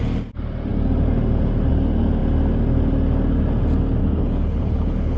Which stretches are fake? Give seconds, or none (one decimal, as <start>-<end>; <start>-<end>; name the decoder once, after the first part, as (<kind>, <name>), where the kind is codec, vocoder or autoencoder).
4.0-5.2 (codec, HILCodec)